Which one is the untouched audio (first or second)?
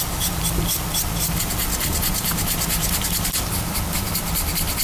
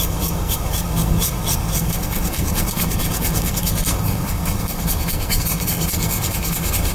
first